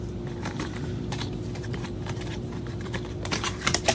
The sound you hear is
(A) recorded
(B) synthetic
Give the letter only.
B